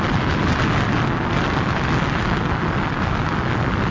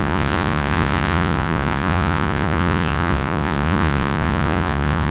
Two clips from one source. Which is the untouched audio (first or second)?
first